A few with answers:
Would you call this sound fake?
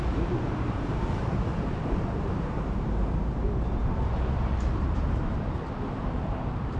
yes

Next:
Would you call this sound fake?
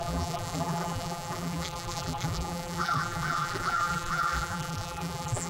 yes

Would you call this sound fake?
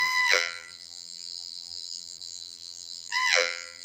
yes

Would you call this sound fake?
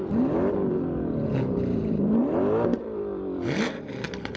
yes